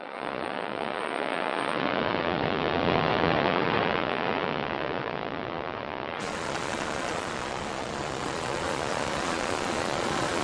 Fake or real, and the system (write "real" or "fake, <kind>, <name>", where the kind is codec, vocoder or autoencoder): fake, vocoder, Vocos